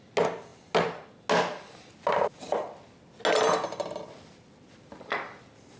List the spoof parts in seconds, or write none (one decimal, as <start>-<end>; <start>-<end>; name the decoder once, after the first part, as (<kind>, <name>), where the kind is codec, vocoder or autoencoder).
none